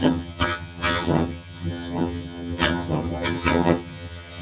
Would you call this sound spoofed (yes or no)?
yes